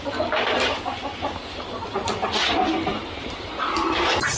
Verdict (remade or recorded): recorded